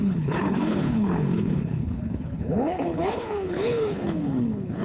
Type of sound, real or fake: fake